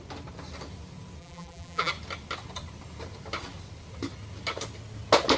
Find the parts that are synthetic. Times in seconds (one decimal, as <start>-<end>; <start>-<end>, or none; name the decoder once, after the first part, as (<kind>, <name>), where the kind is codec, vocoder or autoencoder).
1.2-1.9 (vocoder, BigVGAN v2)